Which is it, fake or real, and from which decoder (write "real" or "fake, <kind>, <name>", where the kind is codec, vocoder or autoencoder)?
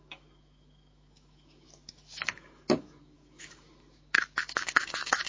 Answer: fake, autoencoder, DAC-VAE